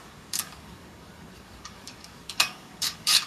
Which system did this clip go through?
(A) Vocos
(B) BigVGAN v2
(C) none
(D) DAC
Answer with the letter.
D